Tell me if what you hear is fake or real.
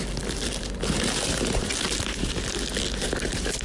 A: real